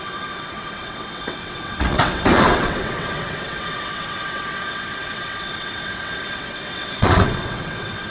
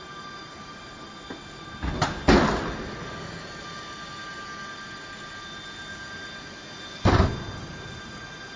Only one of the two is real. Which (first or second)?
second